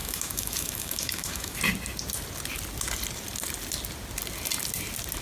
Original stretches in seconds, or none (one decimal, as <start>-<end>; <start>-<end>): 1.6-5.2